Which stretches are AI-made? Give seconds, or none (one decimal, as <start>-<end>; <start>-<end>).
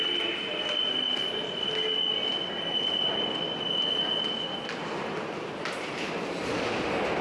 none